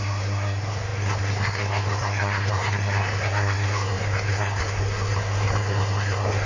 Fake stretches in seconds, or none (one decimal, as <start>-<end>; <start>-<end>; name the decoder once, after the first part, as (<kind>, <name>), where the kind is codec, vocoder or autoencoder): 0.0-6.5 (codec, SNAC)